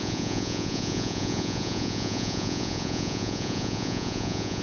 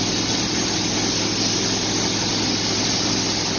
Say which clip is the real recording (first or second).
second